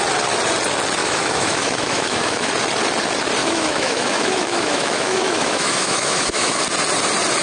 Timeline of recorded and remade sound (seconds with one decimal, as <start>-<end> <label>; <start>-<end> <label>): 0.0-1.0 recorded; 1.0-2.5 remade; 2.5-3.4 recorded; 3.4-6.6 remade; 6.6-7.4 recorded